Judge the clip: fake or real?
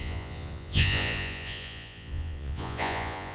fake